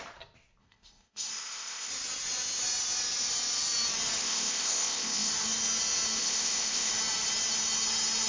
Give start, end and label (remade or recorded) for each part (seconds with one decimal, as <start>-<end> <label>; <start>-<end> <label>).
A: 0.0-0.6 recorded; 0.6-1.9 remade; 1.9-4.2 recorded; 4.2-5.3 remade; 5.3-6.2 recorded; 6.2-6.9 remade; 6.9-8.3 recorded